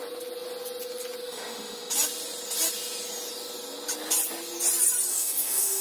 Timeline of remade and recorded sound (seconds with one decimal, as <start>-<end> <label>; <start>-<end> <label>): 0.0-1.2 recorded; 1.2-1.9 remade; 1.9-5.1 recorded; 5.1-5.8 remade